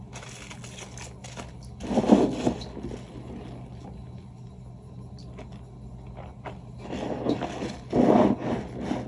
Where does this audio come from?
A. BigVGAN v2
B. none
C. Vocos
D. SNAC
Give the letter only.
B